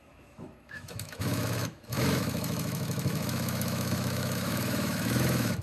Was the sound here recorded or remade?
remade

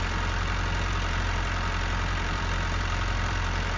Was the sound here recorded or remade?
remade